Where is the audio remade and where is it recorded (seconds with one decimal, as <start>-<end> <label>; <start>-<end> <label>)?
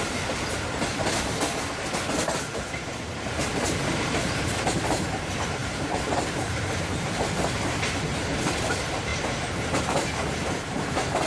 0.0-2.5 recorded; 2.5-5.0 remade; 5.0-5.6 recorded; 5.6-8.7 remade; 8.7-9.1 recorded; 9.1-9.8 remade; 9.8-11.3 recorded